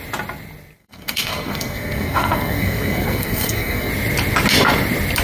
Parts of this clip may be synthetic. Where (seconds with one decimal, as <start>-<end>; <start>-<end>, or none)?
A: 0.8-3.9

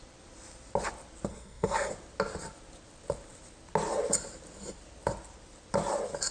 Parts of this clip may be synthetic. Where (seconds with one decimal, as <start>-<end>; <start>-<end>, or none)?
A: 1.3-1.9

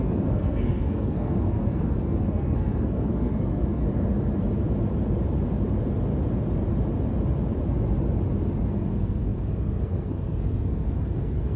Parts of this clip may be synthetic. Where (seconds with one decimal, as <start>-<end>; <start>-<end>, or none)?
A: 0.0-3.8; 8.7-11.6